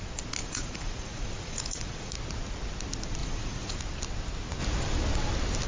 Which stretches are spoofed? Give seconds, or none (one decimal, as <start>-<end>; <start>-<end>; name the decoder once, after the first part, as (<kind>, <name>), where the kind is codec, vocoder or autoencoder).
0.4-2.1 (vocoder, Vocos); 3.2-3.8